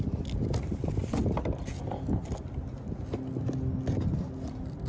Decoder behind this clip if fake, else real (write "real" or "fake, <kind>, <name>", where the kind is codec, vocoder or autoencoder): real